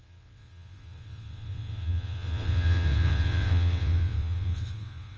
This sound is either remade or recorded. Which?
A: remade